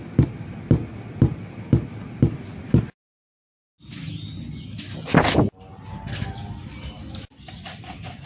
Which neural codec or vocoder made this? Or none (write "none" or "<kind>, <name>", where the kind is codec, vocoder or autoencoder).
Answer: none